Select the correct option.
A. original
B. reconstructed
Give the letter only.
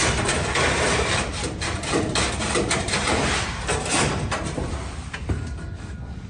B